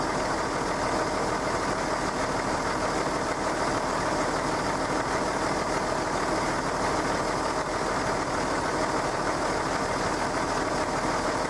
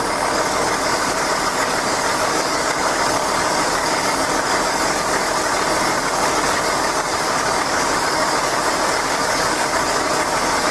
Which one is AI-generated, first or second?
second